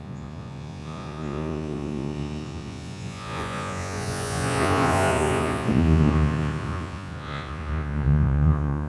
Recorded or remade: remade